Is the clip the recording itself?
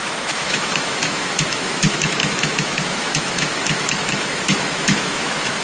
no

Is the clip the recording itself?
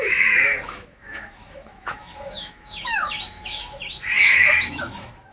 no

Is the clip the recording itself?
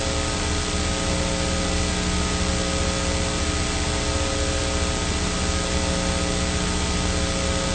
yes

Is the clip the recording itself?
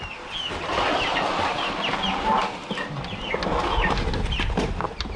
yes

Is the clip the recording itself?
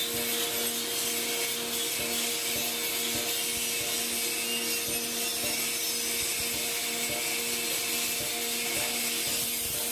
yes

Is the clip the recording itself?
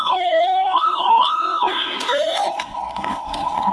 no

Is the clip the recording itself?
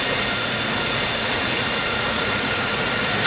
no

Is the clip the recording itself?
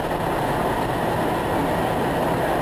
yes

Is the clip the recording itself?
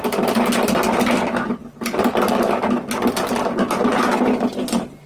yes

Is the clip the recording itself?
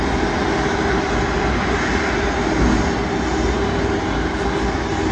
yes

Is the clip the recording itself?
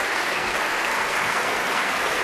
no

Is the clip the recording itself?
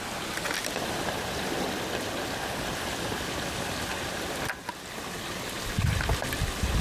yes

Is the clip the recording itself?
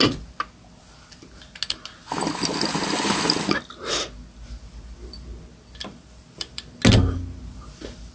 yes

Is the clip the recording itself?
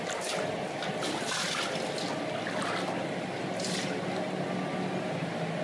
yes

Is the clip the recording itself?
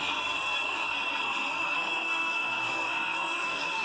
no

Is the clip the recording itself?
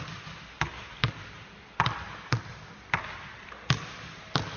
yes